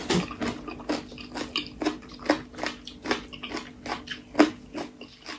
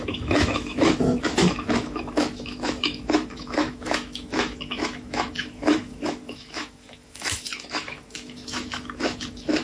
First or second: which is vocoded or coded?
second